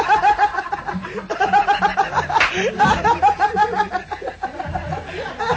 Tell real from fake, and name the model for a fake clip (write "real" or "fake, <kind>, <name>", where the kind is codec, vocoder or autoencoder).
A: real